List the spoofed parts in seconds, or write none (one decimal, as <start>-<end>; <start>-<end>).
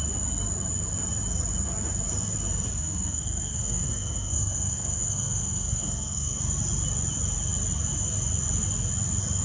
2.7-6.4